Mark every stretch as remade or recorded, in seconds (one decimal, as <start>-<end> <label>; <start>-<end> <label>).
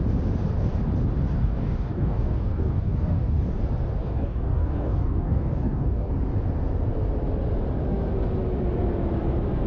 0.0-1.4 recorded; 1.4-3.6 remade; 3.6-4.0 recorded; 4.0-6.1 remade; 6.1-9.7 recorded